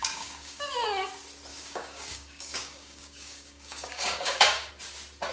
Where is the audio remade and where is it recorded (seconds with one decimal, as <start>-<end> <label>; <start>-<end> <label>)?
0.0-0.7 remade; 0.7-1.5 recorded; 1.5-4.7 remade; 4.7-5.3 recorded